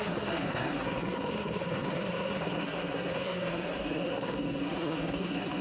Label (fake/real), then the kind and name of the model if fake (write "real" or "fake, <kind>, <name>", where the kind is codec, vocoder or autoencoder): fake, codec, SNAC